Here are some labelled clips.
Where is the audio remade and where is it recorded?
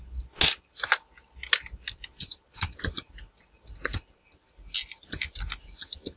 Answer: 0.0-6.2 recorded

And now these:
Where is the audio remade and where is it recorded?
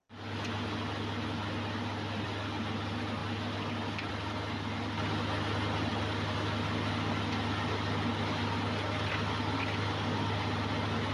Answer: 0.0-11.1 recorded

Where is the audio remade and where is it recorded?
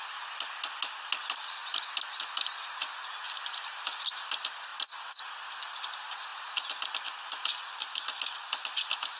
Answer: 0.0-9.2 recorded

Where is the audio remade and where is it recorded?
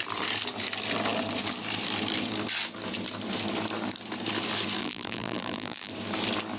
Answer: 0.0-4.8 recorded; 4.8-5.9 remade; 5.9-6.6 recorded